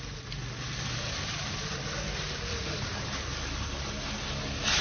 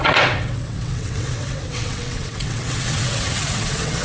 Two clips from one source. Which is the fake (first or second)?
second